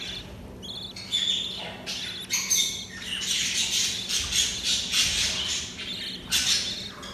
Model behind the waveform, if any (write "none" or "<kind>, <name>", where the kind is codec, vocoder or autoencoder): none